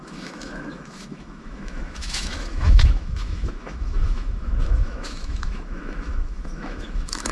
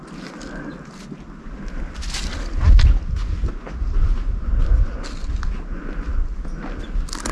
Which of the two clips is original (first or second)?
second